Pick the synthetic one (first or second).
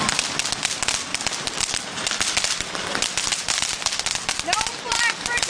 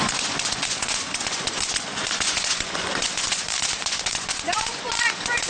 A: second